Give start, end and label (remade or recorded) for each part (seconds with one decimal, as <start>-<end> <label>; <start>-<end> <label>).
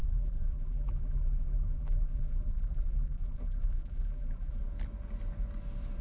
0.0-4.6 remade; 4.6-6.0 recorded